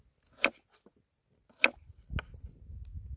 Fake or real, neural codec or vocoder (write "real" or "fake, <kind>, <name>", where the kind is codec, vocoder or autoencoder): real